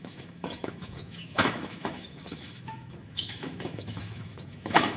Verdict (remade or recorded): remade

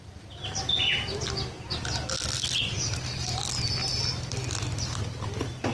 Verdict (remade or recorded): recorded